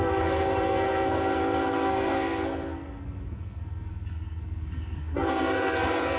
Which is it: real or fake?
fake